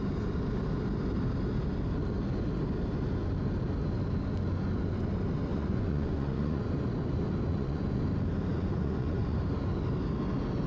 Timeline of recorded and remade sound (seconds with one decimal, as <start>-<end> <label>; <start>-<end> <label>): 0.0-5.5 recorded; 5.5-6.6 remade; 6.6-7.5 recorded; 7.5-8.0 remade; 8.0-8.5 recorded; 8.5-9.4 remade; 9.4-10.7 recorded